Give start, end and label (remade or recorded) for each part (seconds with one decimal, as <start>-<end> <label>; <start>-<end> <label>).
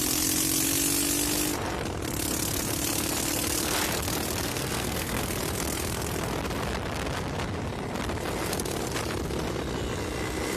0.0-4.5 recorded; 4.5-5.2 remade; 5.2-10.6 recorded